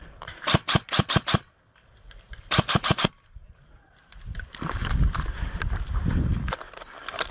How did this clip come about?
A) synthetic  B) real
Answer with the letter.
A